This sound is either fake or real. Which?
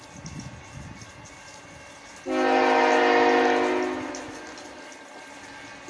real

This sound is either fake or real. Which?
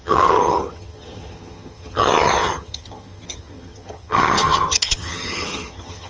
fake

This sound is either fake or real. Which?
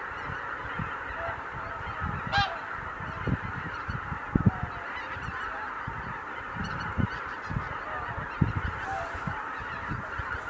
real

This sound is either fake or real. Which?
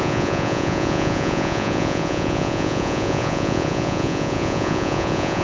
fake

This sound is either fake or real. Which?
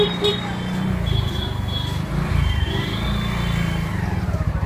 real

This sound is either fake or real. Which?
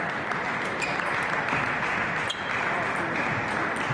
real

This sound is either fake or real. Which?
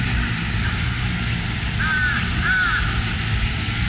real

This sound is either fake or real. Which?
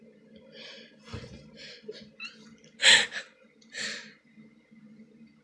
real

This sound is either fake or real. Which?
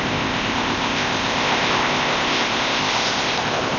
fake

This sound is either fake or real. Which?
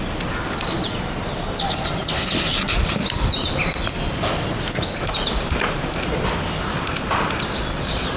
real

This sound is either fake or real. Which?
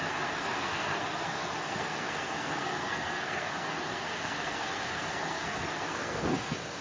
fake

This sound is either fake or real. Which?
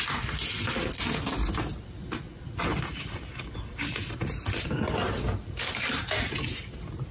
real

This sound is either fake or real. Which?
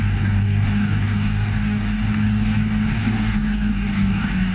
fake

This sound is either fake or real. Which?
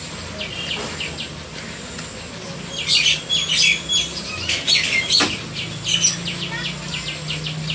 real